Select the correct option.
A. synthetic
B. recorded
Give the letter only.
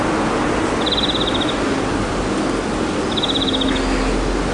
B